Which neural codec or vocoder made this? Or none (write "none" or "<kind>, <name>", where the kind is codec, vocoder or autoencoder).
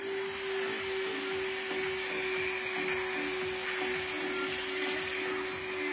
none